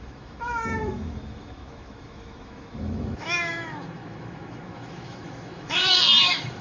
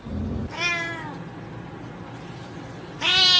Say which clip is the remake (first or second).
first